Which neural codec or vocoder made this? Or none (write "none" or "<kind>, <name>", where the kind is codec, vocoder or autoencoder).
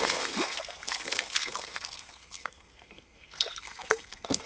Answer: codec, SNAC